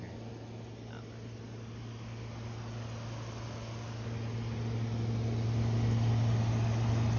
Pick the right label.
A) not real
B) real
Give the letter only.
B